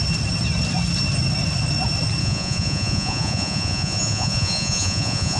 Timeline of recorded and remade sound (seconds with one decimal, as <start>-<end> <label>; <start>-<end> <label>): 0.0-2.2 recorded; 2.2-5.4 remade